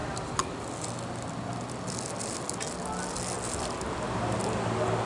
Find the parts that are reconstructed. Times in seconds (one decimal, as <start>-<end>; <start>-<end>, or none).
none